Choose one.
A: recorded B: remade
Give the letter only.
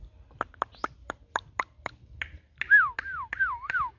A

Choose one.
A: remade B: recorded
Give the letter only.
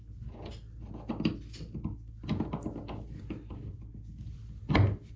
B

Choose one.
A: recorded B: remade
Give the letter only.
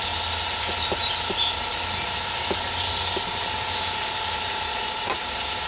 A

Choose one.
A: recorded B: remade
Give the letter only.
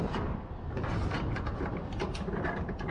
A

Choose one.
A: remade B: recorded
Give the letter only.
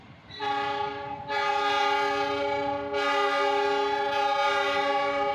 B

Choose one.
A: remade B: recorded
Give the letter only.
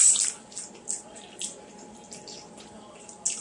B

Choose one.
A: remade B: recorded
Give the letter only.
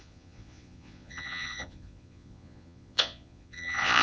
A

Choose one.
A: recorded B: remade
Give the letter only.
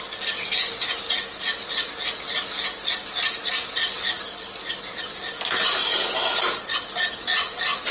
A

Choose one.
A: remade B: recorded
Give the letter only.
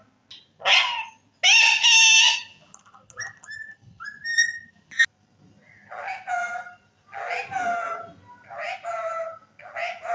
B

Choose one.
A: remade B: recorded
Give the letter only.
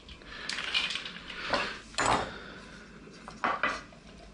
B